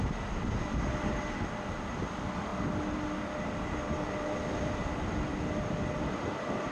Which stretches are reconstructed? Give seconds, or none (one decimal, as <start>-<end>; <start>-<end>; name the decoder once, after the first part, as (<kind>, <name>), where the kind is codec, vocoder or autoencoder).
none